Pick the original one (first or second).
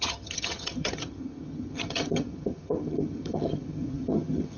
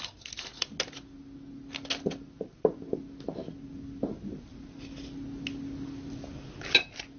second